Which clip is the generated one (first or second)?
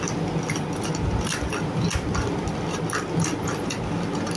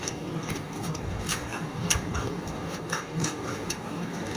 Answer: second